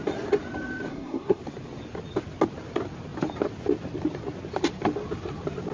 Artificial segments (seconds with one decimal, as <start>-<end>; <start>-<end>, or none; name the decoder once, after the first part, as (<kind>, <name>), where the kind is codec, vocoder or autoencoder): 0.9-1.4 (codec, SNAC)